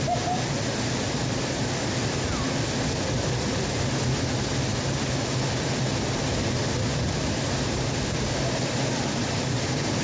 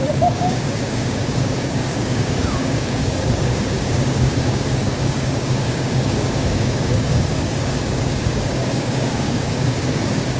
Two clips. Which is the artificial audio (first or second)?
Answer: second